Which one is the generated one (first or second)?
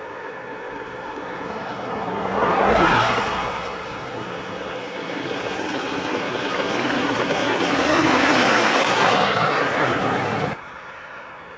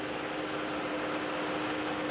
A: first